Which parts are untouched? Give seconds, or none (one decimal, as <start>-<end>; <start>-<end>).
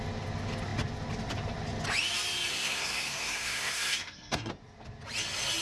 0.0-2.5; 4.5-5.6